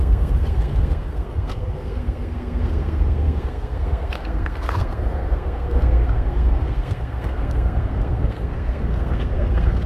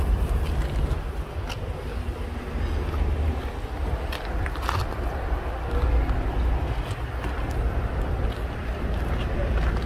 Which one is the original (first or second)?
second